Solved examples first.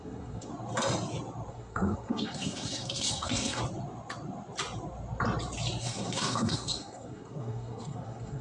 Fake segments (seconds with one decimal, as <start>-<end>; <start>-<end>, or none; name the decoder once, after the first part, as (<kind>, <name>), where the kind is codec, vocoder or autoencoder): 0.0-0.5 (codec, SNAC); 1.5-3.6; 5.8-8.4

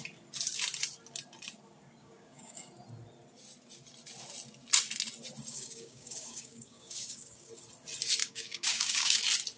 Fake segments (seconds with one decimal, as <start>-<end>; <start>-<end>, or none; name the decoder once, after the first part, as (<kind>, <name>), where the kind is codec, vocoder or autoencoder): 2.0-2.7 (codec, DAC); 5.5-7.5; 8.2-9.2

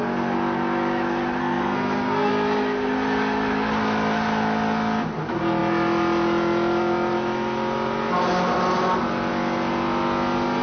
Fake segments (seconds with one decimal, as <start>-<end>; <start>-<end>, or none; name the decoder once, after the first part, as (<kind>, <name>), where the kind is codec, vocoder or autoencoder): 1.4-2.3 (codec, SNAC)